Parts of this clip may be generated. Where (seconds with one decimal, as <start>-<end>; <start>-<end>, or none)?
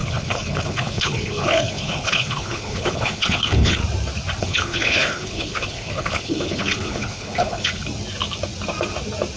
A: 0.0-3.8; 4.4-7.8